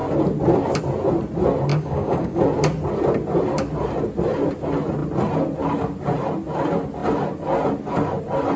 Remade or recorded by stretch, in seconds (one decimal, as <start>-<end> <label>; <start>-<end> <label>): 0.0-1.7 recorded; 1.7-2.4 remade; 2.4-8.6 recorded

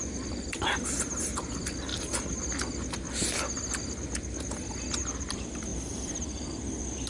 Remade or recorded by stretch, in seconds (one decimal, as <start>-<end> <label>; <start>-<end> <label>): 0.0-5.7 recorded; 5.7-6.6 remade; 6.6-7.1 recorded

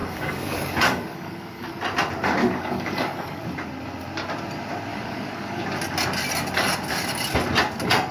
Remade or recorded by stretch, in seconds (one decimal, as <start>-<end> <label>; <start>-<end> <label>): 0.0-1.8 remade; 1.8-2.4 recorded; 2.4-3.4 remade; 3.4-4.9 recorded; 4.9-5.6 remade; 5.6-8.1 recorded

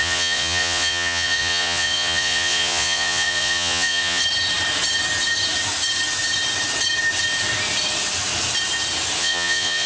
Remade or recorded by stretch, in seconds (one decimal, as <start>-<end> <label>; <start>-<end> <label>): 0.0-4.2 remade; 4.2-9.2 recorded; 9.2-9.9 remade

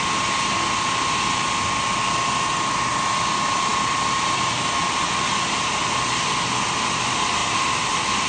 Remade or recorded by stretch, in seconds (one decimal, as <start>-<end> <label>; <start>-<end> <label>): 0.0-3.7 recorded; 3.7-4.8 remade; 4.8-8.3 recorded

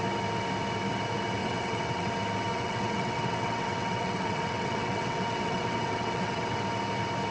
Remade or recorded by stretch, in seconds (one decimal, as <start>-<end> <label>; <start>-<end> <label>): 0.0-1.4 recorded; 1.4-2.1 remade; 2.1-2.5 recorded; 2.5-6.6 remade; 6.6-7.3 recorded

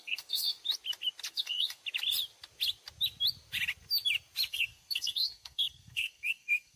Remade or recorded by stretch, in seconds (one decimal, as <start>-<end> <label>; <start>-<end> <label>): 0.0-0.6 remade; 0.6-1.3 recorded; 1.3-1.8 remade; 1.8-4.5 recorded; 4.5-6.8 remade

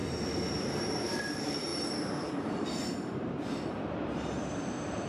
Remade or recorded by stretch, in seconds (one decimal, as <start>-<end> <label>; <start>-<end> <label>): 0.0-0.5 recorded; 0.5-5.1 remade